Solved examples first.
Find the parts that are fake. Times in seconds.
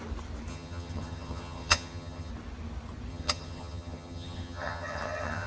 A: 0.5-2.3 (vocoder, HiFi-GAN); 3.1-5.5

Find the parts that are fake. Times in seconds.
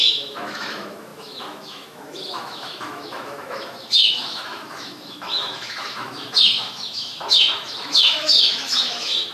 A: 0.0-9.3 (autoencoder, DAC-VAE)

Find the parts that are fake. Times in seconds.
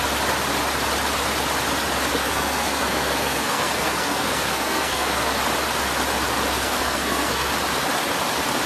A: 2.2-5.4 (codec, SNAC); 6.5-7.5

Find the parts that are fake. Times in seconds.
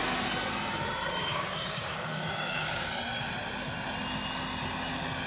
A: 1.2-2.9 (codec, DAC)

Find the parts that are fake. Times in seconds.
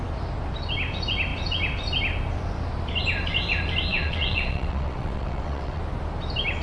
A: 3.9-5.8 (vocoder, WaveNeXt)